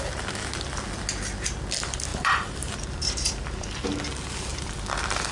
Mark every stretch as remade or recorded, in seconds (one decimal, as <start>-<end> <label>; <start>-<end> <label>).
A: 0.0-2.1 recorded; 2.1-3.1 remade; 3.1-4.5 recorded; 4.5-5.3 remade